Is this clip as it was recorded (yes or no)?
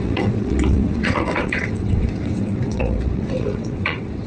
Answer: no